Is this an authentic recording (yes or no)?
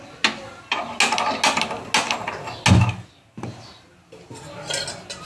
yes